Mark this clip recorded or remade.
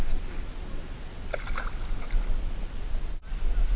recorded